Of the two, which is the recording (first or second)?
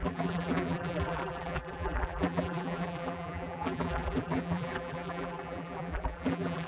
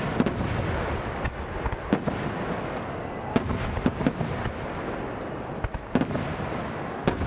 second